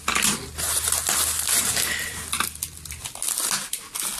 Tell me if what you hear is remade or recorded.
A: recorded